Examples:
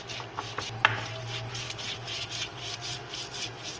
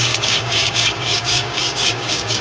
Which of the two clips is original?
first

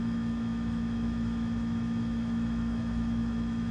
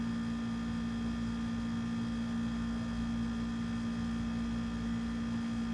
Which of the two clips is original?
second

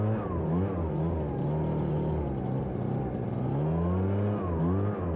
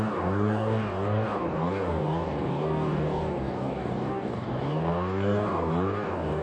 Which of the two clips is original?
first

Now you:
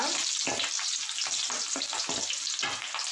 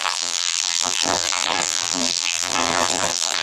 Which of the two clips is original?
first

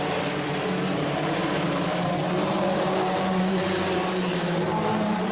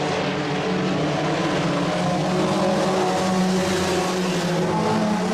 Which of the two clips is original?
second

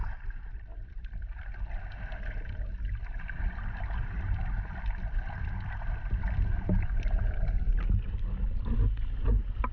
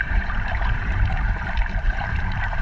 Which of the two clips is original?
first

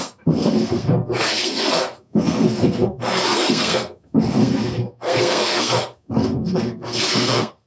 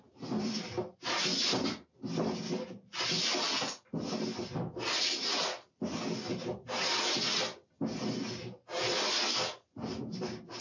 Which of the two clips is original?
second